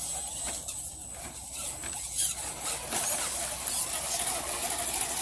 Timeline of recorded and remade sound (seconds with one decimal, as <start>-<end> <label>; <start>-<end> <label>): 0.0-5.2 recorded